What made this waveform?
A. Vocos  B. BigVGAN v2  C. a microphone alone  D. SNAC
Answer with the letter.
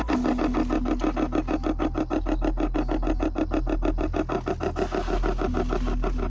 C